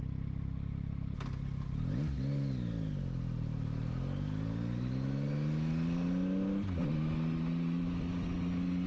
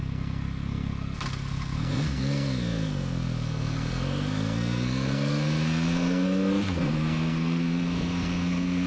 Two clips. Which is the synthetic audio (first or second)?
second